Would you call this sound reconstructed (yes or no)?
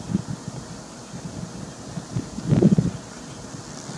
no